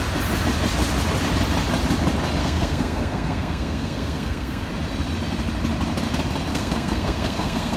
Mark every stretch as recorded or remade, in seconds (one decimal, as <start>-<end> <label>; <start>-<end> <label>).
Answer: 0.0-2.4 recorded; 2.4-4.7 remade; 4.7-6.5 recorded; 6.5-7.8 remade